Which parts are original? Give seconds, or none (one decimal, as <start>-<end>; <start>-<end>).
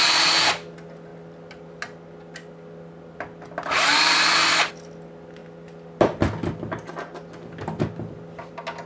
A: 0.0-8.9